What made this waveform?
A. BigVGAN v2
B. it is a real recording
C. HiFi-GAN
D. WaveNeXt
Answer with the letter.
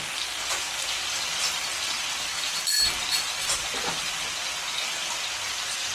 B